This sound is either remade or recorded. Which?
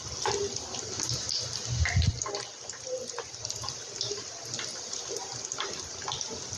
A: recorded